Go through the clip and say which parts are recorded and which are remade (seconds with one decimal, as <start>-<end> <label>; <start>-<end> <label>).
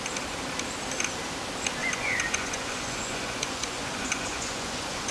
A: 0.0-1.8 recorded; 1.8-5.1 remade